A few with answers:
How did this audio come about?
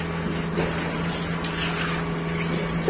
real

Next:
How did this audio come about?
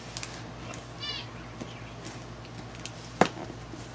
real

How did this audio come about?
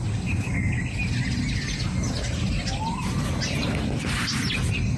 real